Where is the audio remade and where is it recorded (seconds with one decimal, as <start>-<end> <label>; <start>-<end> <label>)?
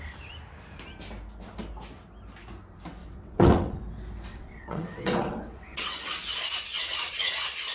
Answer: 0.0-3.0 recorded; 3.0-3.8 remade; 3.8-4.3 recorded; 4.3-6.2 remade; 6.2-6.7 recorded; 6.7-7.3 remade; 7.3-7.7 recorded